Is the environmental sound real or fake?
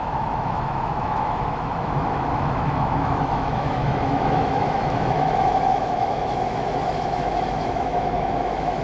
fake